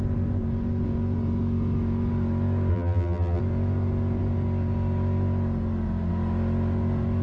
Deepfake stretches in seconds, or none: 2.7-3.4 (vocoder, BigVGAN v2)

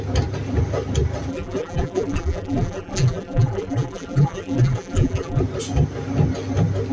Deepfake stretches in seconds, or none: 1.3-5.4 (vocoder, BigVGAN v2)